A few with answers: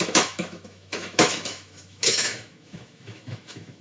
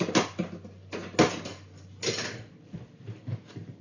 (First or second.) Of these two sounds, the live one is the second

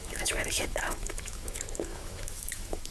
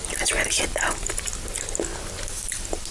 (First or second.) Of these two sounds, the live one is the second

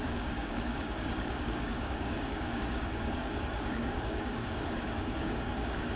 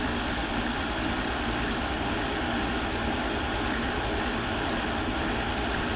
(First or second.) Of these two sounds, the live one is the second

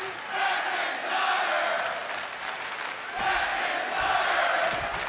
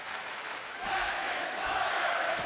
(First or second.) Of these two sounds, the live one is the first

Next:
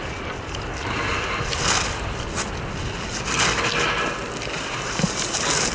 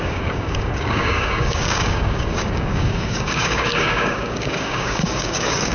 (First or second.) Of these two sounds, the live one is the first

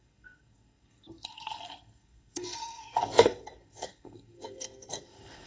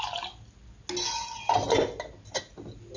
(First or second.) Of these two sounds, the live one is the second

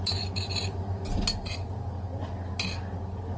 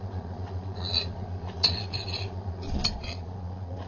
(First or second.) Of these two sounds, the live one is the first